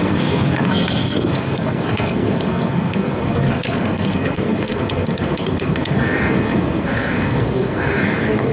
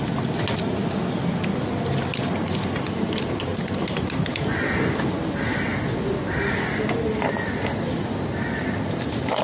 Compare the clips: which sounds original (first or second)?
second